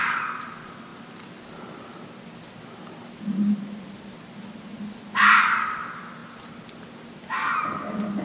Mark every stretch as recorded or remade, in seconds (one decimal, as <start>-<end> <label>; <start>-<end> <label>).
0.0-8.2 recorded